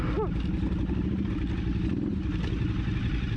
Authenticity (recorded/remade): recorded